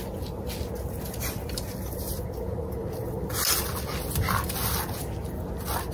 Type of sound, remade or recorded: recorded